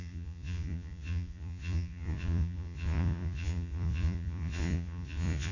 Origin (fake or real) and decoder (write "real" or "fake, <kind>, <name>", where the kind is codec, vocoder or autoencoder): fake, vocoder, Vocos